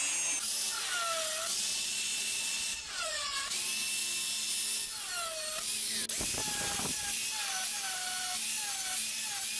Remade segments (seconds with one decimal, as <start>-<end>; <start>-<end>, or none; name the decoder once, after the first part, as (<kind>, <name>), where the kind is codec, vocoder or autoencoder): 1.5-3.6 (vocoder, Vocos)